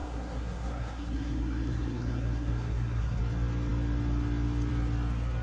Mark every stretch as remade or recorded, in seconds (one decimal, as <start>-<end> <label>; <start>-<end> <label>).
0.0-3.2 remade; 3.2-5.4 recorded